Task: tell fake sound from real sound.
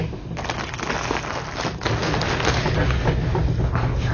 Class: real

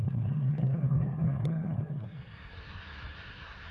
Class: fake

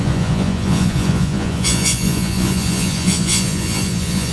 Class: fake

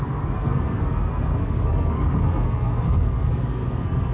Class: fake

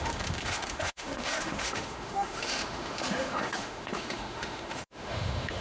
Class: fake